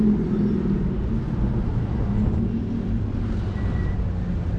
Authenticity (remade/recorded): recorded